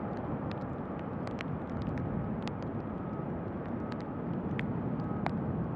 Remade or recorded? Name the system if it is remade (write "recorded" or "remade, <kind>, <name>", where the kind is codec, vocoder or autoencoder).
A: recorded